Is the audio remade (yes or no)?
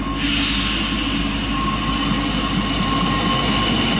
no